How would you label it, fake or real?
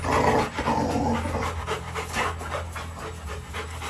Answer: real